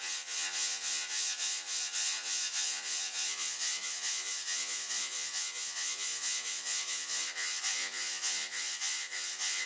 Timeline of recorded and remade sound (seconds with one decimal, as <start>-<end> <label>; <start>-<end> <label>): 0.0-9.7 remade